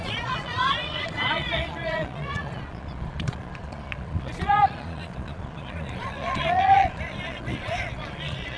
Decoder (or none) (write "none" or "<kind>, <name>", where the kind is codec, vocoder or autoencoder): vocoder, Vocos